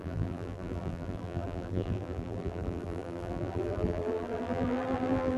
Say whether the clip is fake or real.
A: fake